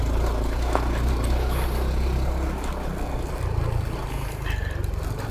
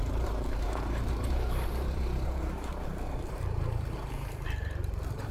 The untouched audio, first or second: first